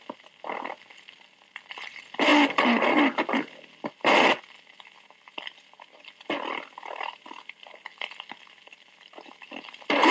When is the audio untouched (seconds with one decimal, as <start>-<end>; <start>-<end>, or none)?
0.0-10.1